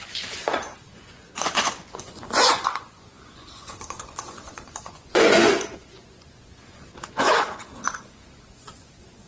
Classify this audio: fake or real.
fake